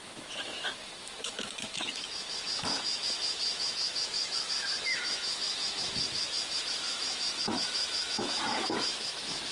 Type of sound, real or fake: fake